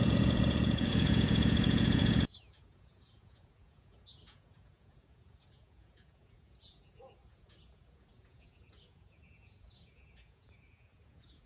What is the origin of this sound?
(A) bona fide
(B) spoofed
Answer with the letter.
B